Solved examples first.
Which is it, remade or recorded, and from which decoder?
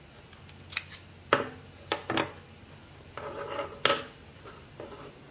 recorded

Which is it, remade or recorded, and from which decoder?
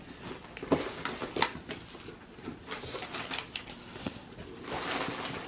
recorded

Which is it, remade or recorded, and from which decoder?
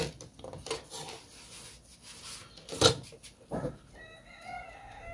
recorded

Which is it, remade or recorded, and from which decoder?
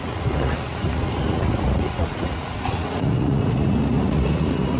remade, vocoder, Vocos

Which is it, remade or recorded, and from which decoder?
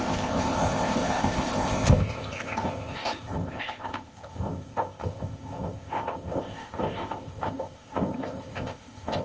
remade, codec, ZipCodec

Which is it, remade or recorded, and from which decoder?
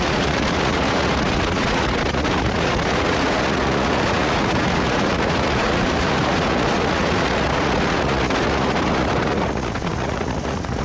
remade, vocoder, Vocos